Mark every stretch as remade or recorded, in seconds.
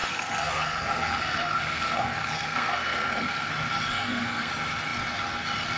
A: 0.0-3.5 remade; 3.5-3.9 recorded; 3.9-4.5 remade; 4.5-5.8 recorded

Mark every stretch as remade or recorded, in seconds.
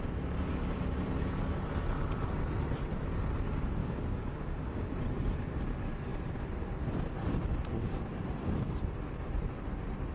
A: 0.0-3.8 recorded; 3.8-4.9 remade; 4.9-10.1 recorded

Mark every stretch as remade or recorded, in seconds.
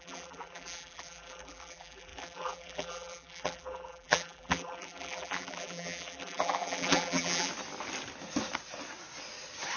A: 0.0-7.5 remade; 7.5-9.8 recorded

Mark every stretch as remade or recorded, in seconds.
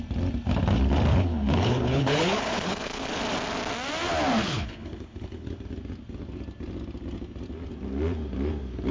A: 0.0-1.1 recorded; 1.1-3.2 remade; 3.2-4.4 recorded; 4.4-5.5 remade; 5.5-8.9 recorded